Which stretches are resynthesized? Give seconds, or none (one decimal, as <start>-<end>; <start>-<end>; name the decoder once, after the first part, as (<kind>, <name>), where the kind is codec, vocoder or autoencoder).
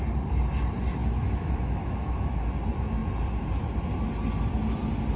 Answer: 1.0-2.3 (autoencoder, DAC-VAE)